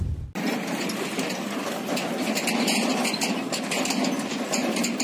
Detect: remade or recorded recorded